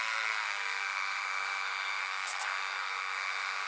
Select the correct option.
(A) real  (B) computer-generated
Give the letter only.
B